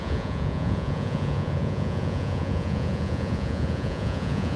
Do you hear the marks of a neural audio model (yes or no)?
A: yes